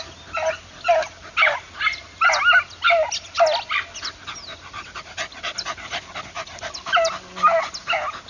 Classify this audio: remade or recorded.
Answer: recorded